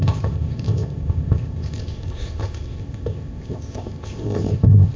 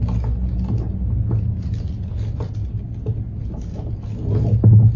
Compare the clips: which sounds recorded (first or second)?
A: second